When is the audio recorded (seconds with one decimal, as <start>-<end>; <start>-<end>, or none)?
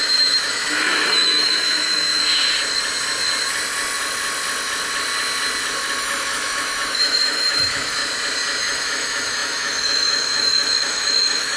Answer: 2.2-6.0; 8.0-8.6